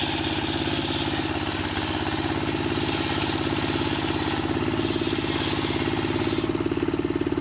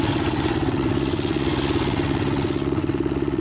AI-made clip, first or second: second